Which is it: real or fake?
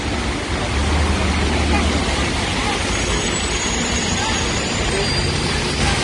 real